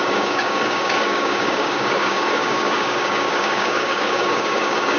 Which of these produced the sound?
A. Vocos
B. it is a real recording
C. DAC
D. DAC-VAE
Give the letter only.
C